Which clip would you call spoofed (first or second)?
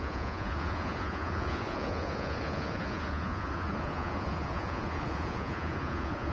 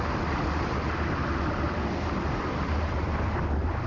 first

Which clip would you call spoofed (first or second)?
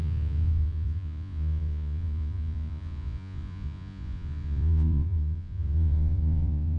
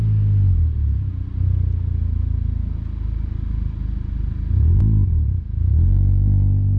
first